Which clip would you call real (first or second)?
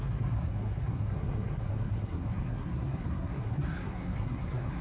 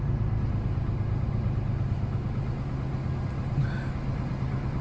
second